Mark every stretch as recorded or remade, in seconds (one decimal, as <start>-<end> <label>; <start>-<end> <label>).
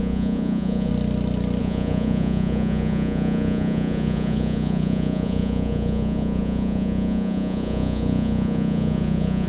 0.0-0.9 remade; 0.9-1.6 recorded; 1.6-9.5 remade